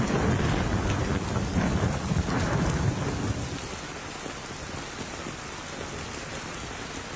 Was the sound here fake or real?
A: real